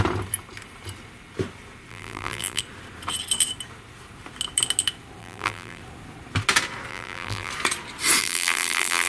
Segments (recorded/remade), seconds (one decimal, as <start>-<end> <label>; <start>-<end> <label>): 0.0-1.9 recorded; 1.9-2.6 remade; 2.6-5.2 recorded; 5.2-5.8 remade; 5.8-6.9 recorded; 6.9-7.5 remade; 7.5-8.2 recorded; 8.2-9.1 remade